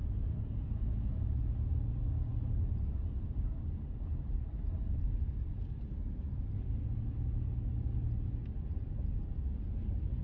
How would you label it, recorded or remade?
recorded